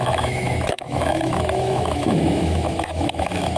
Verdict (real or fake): fake